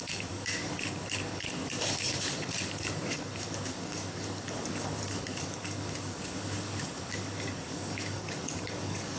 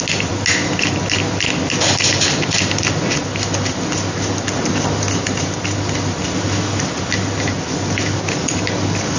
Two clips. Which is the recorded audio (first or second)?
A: second